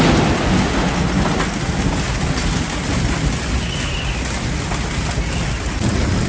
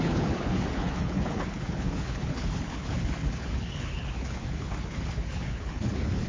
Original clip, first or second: first